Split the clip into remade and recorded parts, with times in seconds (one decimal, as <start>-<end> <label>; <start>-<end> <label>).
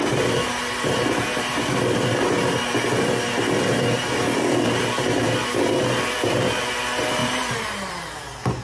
0.0-8.6 recorded